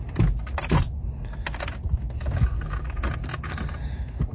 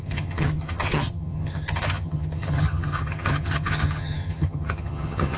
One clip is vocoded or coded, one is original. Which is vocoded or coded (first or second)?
second